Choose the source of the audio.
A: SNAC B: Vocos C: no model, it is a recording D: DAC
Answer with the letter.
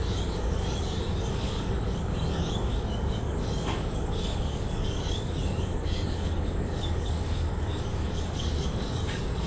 D